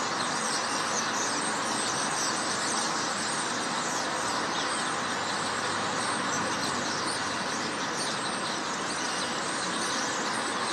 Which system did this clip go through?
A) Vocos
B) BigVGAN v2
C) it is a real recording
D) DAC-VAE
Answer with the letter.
C